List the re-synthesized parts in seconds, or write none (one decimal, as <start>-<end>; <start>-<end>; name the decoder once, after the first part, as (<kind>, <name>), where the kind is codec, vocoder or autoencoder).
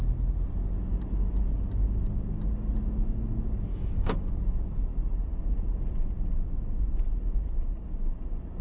3.7-4.3 (codec, DAC)